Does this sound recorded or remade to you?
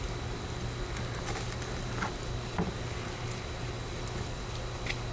recorded